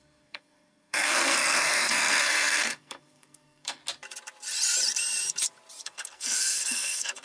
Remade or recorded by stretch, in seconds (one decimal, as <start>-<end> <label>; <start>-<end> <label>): 0.0-3.8 remade; 3.8-5.8 recorded; 5.8-7.2 remade

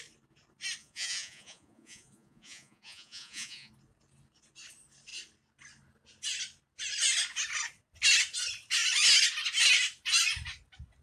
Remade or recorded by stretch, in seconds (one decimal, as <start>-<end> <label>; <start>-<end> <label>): 0.0-0.8 recorded; 0.8-3.7 remade; 3.7-11.0 recorded

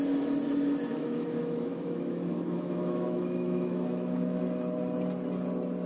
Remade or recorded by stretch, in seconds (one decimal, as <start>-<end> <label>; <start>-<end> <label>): 0.0-0.9 recorded; 0.9-4.4 remade; 4.4-5.9 recorded

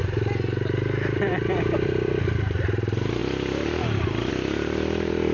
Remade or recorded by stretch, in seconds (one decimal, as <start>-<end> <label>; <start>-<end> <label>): 0.0-5.3 remade

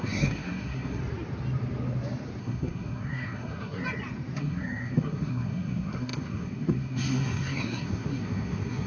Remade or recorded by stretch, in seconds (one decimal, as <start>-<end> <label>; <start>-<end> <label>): 0.0-1.0 remade; 1.0-2.4 recorded; 2.4-3.8 remade; 3.8-4.4 recorded; 4.4-8.9 remade

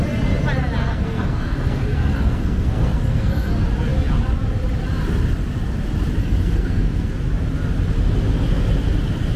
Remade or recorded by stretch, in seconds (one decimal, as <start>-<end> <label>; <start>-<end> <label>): 0.0-0.9 recorded; 0.9-3.5 remade; 3.5-6.2 recorded; 6.2-7.1 remade; 7.1-9.4 recorded

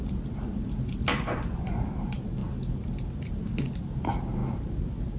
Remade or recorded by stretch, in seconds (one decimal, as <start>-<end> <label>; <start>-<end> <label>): 0.0-1.1 recorded; 1.1-1.8 remade; 1.8-5.2 recorded

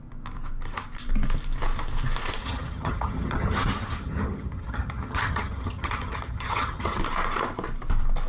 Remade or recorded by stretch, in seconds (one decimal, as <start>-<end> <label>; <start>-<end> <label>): 0.0-2.4 recorded; 2.4-7.0 remade; 7.0-8.3 recorded